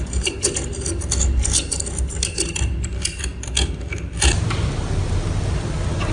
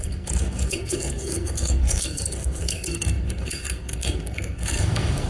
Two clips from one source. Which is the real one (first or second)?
first